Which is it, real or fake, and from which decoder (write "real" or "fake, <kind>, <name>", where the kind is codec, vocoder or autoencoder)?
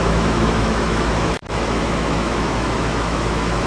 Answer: fake, autoencoder, DAC-VAE